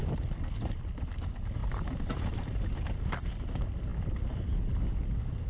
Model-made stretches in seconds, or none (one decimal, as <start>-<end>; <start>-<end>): 1.6-3.4